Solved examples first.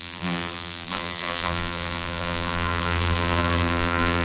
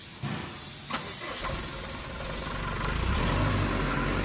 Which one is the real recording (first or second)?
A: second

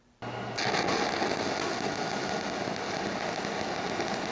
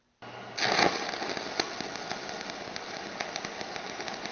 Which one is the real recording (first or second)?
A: first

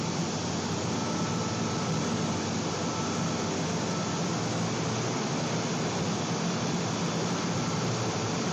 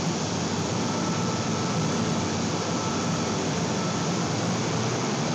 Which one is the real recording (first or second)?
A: first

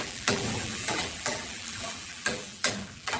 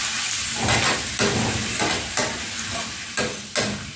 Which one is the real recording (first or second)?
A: second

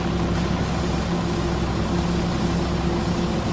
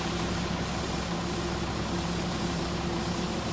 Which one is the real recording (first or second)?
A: first